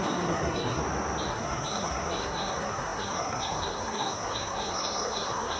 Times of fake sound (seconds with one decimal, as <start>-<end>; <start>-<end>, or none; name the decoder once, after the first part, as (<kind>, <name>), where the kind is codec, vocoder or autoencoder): 0.0-0.8 (codec, SNAC); 1.3-5.6